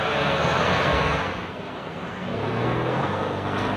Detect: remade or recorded remade